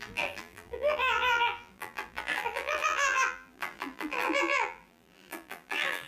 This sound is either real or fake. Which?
fake